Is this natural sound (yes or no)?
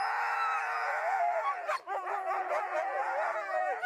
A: no